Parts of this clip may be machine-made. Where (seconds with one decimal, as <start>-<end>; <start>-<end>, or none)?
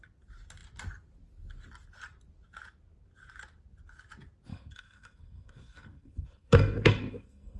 4.5-7.6